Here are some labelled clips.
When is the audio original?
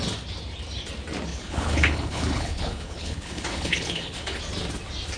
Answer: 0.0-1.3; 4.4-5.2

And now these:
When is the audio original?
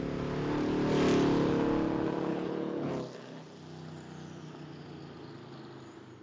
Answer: 0.0-2.3; 2.9-6.2